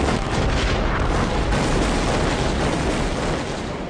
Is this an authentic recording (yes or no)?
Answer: yes